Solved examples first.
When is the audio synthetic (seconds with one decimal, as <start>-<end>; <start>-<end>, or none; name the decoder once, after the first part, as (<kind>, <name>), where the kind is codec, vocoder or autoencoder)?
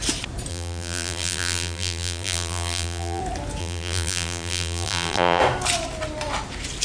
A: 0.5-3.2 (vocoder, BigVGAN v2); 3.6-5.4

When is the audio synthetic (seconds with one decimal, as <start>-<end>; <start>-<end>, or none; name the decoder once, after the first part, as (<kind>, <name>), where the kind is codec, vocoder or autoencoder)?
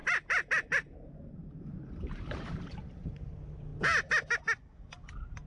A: 0.0-3.3 (vocoder, BigVGAN v2)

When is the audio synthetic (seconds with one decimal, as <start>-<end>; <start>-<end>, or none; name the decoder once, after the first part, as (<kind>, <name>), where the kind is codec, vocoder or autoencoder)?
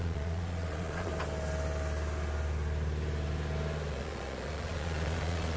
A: 0.0-1.1 (vocoder, Vocos); 3.9-5.6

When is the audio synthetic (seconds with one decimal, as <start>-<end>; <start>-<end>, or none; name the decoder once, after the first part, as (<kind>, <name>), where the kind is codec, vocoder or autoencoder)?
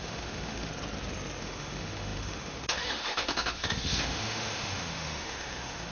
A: 0.0-0.7 (autoencoder, DAC-VAE); 1.4-5.9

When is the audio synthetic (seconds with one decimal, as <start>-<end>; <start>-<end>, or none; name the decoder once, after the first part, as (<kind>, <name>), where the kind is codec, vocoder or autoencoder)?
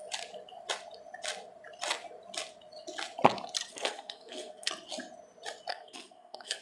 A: 3.7-4.7 (codec, SNAC); 5.7-6.6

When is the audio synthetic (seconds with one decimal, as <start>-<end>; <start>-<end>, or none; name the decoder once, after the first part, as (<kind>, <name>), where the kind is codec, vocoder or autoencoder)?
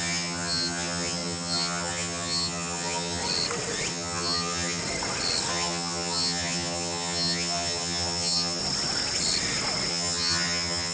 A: 0.0-3.2 (vocoder, HiFi-GAN); 3.9-4.8; 5.5-8.6; 9.9-10.9